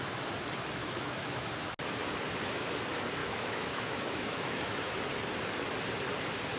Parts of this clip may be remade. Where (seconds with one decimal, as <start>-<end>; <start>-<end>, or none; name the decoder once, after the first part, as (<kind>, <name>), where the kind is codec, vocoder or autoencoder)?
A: 0.8-1.5 (autoencoder, DAC-VAE); 3.2-5.0